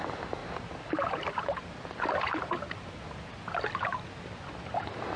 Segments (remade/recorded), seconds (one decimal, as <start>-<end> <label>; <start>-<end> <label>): 0.0-0.4 recorded; 0.4-3.5 remade; 3.5-5.2 recorded